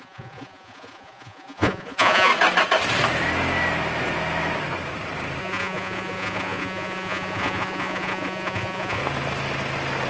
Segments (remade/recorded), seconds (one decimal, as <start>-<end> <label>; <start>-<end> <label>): 0.0-2.3 remade; 2.3-5.4 recorded; 5.4-9.0 remade; 9.0-10.1 recorded